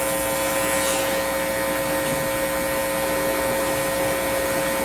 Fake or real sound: real